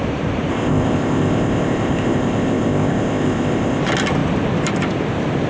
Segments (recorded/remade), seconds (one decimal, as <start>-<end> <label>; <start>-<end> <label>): 0.0-0.5 recorded; 0.5-3.8 remade; 3.8-5.5 recorded